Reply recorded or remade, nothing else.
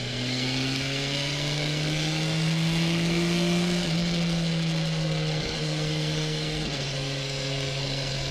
remade